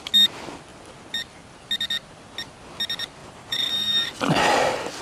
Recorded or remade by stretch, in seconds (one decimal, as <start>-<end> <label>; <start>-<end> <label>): 0.0-3.2 recorded; 3.2-4.1 remade; 4.1-5.0 recorded